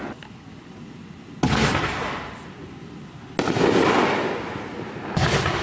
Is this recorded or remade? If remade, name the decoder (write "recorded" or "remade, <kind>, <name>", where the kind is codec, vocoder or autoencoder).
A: recorded